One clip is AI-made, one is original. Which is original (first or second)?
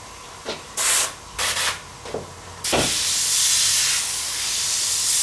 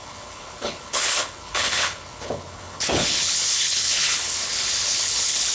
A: first